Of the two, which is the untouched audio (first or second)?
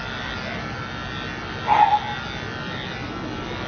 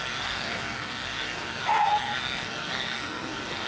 first